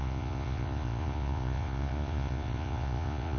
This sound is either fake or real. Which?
fake